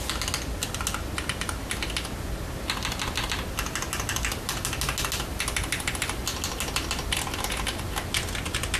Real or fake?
real